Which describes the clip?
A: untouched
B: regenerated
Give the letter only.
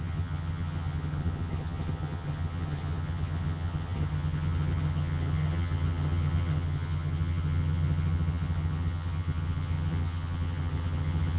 B